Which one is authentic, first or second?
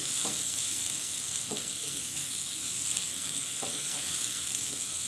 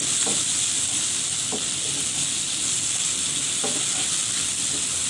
second